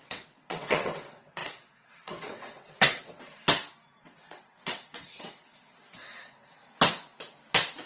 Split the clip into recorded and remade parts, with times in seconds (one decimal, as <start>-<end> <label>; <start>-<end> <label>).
0.0-3.3 remade; 3.3-4.0 recorded; 4.0-6.6 remade; 6.6-7.9 recorded